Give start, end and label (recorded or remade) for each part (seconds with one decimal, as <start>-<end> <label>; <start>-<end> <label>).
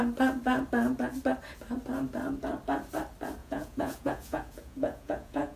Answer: 0.0-3.4 recorded; 3.4-5.6 remade